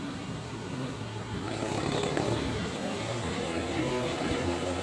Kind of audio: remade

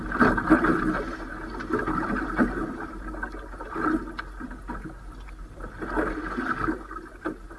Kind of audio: recorded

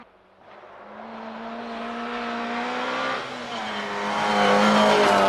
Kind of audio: recorded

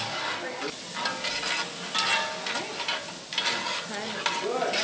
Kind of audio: recorded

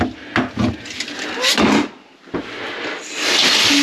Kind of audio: recorded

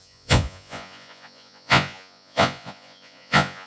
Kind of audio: remade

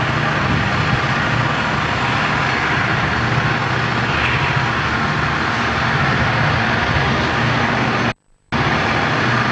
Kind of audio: recorded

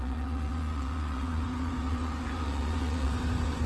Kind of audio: remade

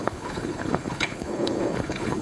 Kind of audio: remade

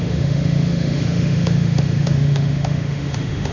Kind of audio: remade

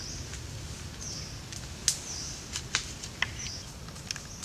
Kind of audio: recorded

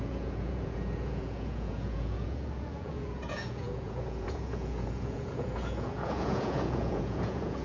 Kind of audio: remade